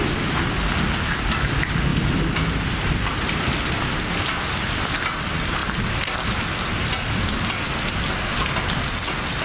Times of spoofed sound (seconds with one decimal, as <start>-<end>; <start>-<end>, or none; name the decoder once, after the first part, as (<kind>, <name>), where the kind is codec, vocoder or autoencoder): none